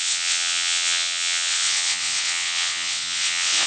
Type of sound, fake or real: fake